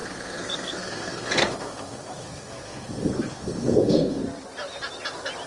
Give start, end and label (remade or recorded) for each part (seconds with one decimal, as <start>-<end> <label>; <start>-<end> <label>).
0.0-4.2 remade; 4.2-5.5 recorded